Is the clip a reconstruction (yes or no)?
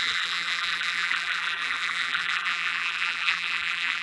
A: yes